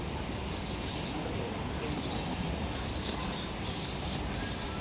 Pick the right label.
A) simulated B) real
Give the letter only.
B